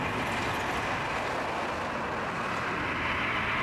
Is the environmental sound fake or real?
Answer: real